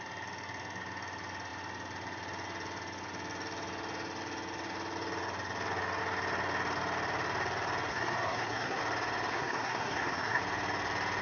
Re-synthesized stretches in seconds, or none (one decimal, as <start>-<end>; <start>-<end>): 7.9-8.8; 9.3-10.4